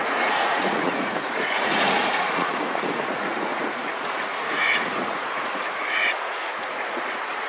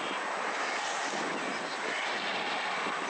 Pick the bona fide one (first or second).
second